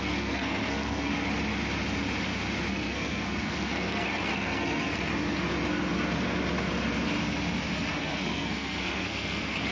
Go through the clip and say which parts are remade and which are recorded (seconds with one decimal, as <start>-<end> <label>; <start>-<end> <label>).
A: 0.0-1.1 remade; 1.1-2.7 recorded; 2.7-5.1 remade; 5.1-7.9 recorded; 7.9-9.7 remade